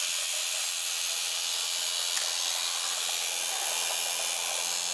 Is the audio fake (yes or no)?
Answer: no